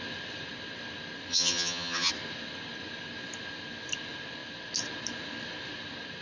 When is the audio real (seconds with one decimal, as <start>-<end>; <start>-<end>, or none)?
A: 0.0-1.3; 2.1-6.2